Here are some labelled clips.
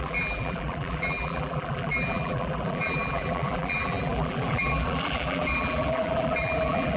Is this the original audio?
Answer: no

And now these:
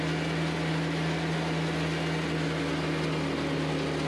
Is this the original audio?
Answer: yes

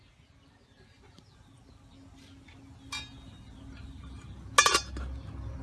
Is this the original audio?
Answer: yes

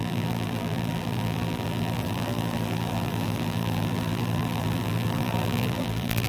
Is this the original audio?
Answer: no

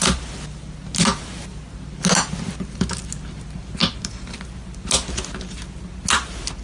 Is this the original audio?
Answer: yes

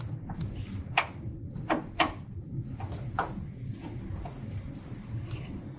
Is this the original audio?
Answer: yes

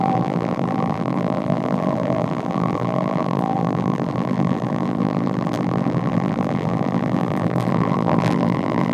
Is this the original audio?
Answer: no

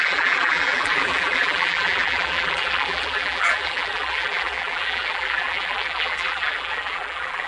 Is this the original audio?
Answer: no